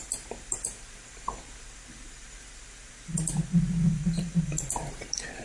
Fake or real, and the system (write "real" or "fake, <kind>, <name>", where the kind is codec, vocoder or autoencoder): real